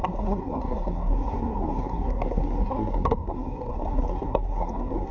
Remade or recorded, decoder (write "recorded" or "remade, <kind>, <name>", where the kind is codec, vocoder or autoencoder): remade, codec, SNAC